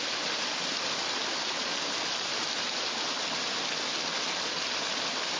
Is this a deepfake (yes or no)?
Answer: no